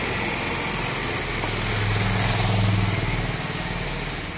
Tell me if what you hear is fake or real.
real